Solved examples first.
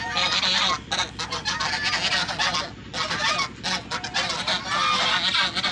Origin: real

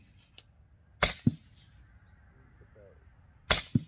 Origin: real